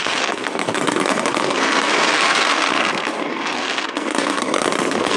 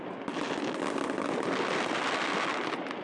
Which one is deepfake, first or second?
first